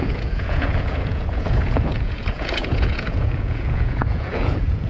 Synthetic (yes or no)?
yes